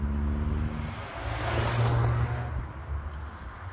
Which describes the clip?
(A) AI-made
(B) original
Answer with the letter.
B